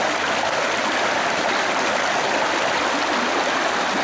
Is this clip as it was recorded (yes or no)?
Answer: yes